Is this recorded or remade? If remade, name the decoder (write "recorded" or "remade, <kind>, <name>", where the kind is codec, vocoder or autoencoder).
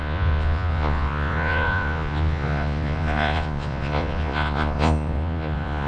remade, vocoder, Vocos